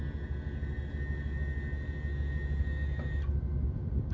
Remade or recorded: recorded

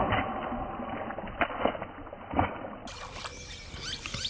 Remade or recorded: recorded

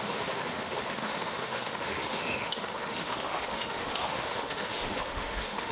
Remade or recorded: remade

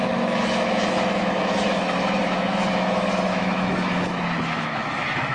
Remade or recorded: remade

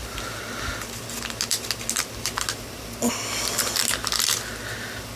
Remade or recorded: recorded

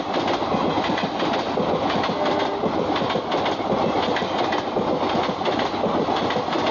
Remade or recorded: recorded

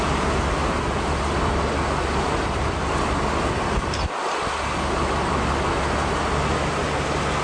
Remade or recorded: recorded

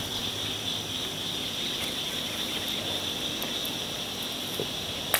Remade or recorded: recorded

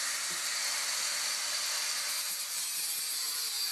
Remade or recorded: recorded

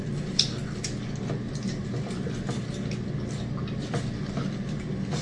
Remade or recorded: recorded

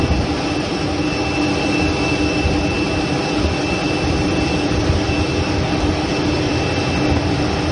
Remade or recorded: recorded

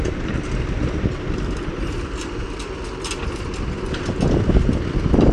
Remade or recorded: recorded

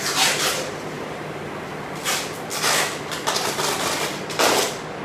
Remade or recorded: recorded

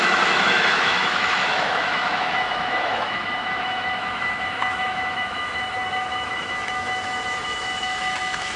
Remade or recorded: remade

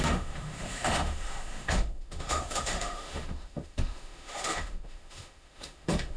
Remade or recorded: remade